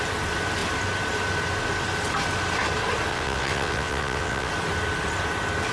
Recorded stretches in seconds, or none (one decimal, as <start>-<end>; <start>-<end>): 0.0-3.1; 4.5-5.7